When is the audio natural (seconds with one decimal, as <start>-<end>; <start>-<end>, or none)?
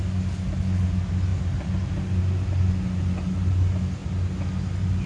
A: 0.0-5.1